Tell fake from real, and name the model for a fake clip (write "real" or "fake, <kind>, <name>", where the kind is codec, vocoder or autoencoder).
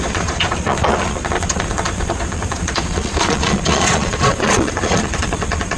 fake, vocoder, Vocos